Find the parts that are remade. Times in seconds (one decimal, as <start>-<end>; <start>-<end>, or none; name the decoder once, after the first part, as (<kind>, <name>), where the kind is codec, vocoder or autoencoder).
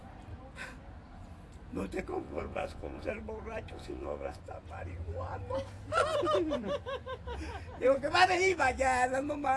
2.1-3.1 (vocoder, Vocos); 3.7-4.4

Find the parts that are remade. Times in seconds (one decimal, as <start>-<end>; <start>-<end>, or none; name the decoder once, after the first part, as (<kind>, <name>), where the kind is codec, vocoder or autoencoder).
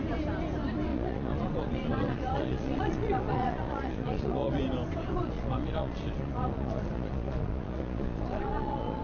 0.9-4.6 (vocoder, Vocos); 5.1-9.0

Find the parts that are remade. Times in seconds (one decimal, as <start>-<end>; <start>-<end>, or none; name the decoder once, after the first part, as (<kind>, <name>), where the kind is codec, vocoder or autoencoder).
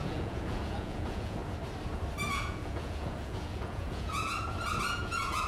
0.0-1.4 (vocoder, Vocos); 2.3-4.3; 4.9-5.5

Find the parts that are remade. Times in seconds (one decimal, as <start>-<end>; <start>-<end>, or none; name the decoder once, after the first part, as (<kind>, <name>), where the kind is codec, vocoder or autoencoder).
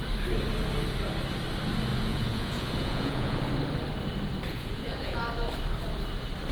1.9-3.5 (vocoder, Vocos); 4.5-5.2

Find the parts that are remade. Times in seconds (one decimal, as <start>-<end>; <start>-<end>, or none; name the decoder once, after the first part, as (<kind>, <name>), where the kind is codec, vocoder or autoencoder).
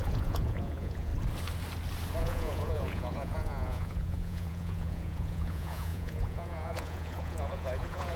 0.0-1.1 (vocoder, Vocos); 2.2-8.2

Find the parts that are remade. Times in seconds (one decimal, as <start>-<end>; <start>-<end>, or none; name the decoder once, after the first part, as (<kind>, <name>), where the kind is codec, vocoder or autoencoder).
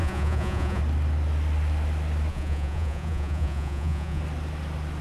0.0-0.8 (vocoder, Vocos); 2.3-4.2